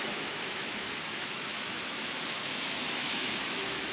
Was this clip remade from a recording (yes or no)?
yes